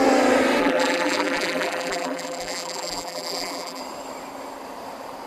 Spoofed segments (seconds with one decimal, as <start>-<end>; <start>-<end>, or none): 0.6-3.8